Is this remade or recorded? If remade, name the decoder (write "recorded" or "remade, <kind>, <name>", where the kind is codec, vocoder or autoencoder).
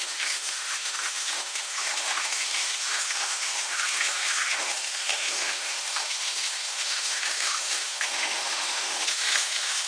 remade, autoencoder, DAC-VAE